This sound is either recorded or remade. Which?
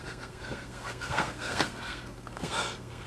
remade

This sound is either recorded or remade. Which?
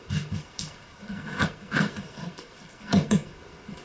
remade